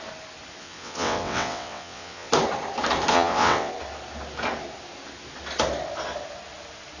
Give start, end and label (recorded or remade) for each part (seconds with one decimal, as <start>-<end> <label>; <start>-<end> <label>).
0.0-0.6 recorded; 0.6-2.3 remade; 2.3-3.1 recorded; 3.1-3.7 remade; 3.7-7.0 recorded